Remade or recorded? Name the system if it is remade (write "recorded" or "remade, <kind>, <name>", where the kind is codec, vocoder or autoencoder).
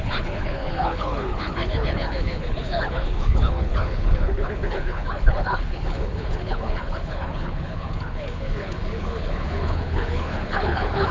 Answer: remade, codec, HILCodec